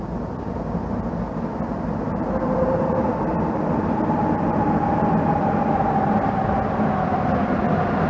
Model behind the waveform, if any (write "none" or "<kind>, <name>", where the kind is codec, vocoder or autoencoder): none